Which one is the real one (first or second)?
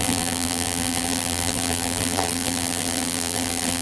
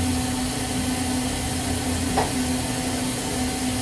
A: second